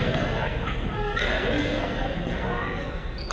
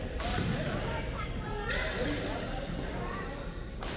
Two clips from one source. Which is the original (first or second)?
second